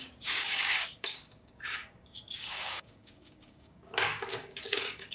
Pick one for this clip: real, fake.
fake